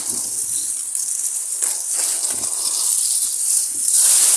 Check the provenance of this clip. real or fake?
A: real